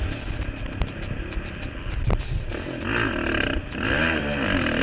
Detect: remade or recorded recorded